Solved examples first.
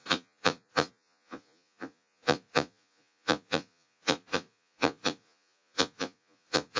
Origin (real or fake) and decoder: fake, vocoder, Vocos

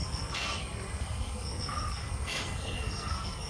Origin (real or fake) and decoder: fake, codec, SNAC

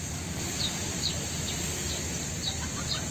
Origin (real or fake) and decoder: real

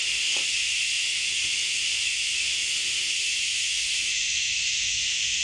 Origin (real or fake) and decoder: fake, autoencoder, DAC-VAE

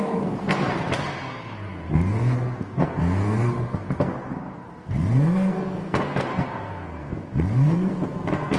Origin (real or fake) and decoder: fake, codec, SNAC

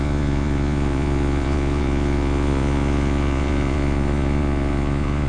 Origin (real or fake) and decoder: fake, vocoder, Vocos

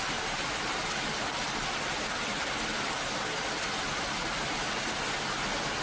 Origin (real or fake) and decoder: real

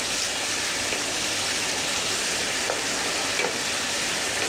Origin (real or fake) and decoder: real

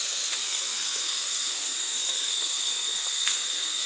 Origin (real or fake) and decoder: fake, codec, SNAC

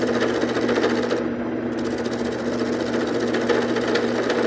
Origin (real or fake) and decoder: real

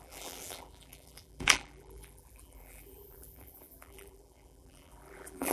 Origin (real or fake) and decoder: fake, vocoder, BigVGAN v2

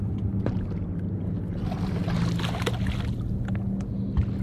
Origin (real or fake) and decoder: real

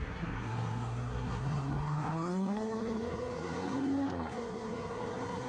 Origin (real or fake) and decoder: fake, codec, SNAC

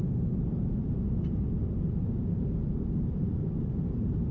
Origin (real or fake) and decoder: fake, vocoder, BigVGAN v2